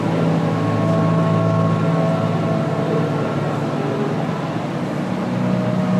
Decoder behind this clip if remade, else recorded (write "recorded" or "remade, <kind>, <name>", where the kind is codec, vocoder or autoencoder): recorded